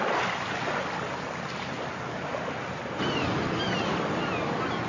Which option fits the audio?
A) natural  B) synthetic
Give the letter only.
A